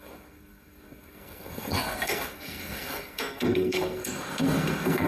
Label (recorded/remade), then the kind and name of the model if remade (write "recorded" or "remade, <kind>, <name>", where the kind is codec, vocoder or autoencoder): remade, codec, SNAC